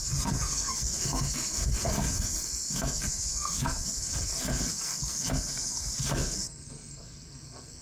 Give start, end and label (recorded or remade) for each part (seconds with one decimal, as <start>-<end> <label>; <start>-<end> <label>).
0.0-7.8 remade